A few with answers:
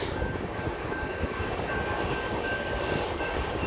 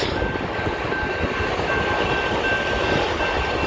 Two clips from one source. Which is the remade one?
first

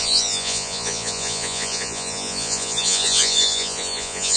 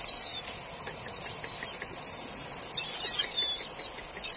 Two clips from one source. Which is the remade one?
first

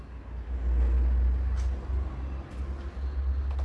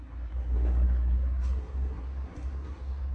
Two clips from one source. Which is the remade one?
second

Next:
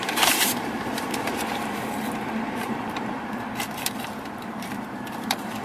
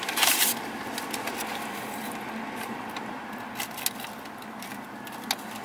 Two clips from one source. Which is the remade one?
first